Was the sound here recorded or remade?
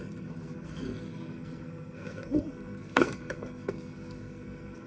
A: remade